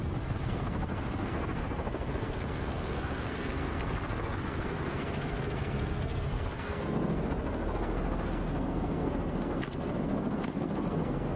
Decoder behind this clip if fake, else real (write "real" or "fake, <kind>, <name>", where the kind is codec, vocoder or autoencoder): fake, codec, SNAC